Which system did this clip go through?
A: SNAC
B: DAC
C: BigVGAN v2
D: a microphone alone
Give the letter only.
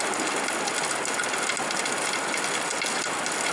D